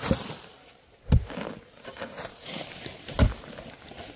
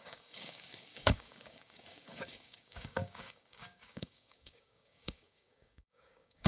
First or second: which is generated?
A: second